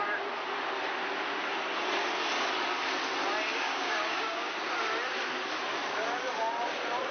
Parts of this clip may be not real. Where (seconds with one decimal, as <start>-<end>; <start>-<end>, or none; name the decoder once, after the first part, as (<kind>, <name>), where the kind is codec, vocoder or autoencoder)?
3.5-4.5 (codec, DAC)